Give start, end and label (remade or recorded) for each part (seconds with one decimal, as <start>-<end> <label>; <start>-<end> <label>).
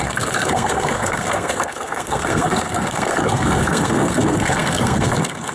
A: 0.0-5.5 remade